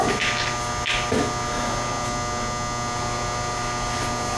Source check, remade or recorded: recorded